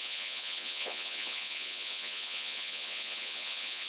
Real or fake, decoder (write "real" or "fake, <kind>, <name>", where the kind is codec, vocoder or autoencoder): fake, vocoder, Vocos